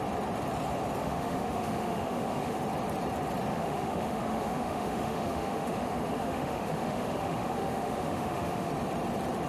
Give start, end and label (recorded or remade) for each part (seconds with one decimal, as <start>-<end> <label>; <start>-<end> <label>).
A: 0.0-1.0 recorded; 1.0-2.6 remade; 2.6-3.5 recorded; 3.5-8.7 remade; 8.7-9.5 recorded

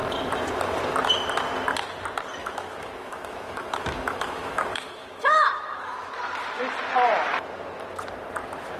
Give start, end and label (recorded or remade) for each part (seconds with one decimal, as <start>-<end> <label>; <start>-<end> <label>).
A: 0.0-2.4 recorded; 2.4-6.1 remade; 6.1-8.8 recorded